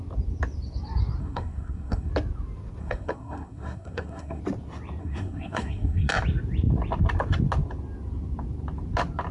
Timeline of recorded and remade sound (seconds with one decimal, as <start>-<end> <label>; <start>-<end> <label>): 0.0-1.2 recorded; 1.2-2.1 remade; 2.1-2.8 recorded; 2.8-4.4 remade; 4.4-5.0 recorded; 5.0-6.1 remade; 6.1-9.3 recorded